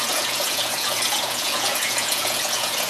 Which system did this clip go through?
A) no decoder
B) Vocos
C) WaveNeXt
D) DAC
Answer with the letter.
B